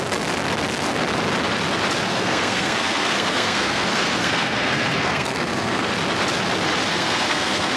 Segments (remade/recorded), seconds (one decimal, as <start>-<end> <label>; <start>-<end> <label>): 0.0-2.1 recorded; 2.1-5.9 remade; 5.9-6.9 recorded; 6.9-7.8 remade